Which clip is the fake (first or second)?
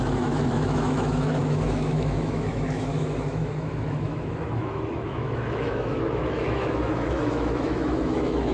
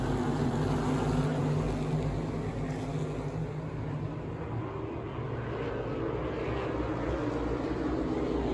first